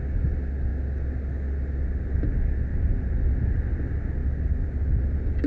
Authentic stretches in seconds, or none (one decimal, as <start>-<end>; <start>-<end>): 0.0-5.5